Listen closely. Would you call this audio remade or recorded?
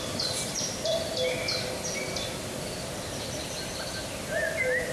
recorded